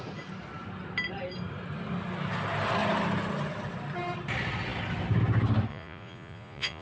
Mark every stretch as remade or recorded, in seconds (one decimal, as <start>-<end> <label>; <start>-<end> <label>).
0.0-5.7 recorded; 5.7-6.8 remade